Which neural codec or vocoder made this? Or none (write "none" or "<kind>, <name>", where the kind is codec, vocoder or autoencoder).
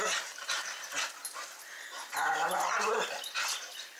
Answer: none